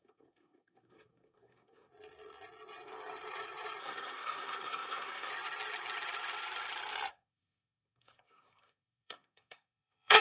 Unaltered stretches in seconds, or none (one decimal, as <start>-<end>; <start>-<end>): 1.9-3.8; 5.3-7.1